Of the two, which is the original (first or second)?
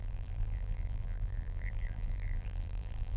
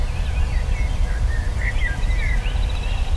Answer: second